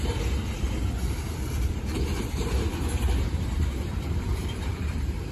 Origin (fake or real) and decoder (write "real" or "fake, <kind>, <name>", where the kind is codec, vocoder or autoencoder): fake, vocoder, BigVGAN v2